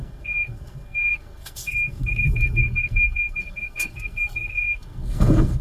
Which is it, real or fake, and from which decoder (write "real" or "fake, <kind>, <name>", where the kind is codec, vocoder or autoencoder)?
fake, codec, SNAC